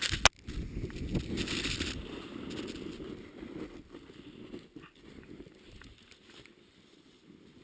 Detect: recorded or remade recorded